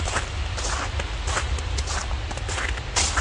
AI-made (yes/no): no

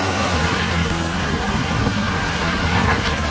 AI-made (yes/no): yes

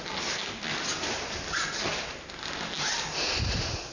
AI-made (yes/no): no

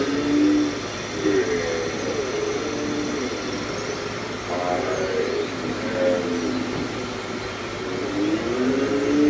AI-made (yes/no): no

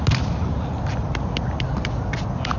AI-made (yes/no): no